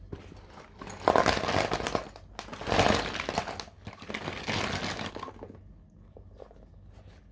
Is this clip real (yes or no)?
yes